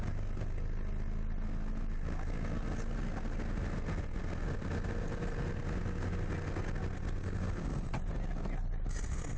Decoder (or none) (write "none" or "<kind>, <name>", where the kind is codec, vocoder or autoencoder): none